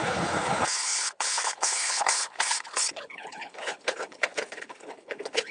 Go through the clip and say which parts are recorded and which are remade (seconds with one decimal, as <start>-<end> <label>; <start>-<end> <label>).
0.0-5.5 remade